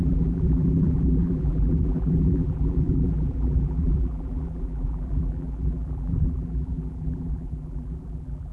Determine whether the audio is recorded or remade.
remade